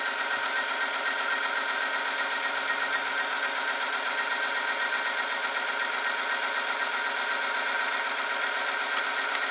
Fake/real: real